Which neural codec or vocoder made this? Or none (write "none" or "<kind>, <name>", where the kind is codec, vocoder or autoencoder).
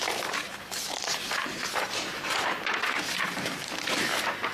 vocoder, BigVGAN v2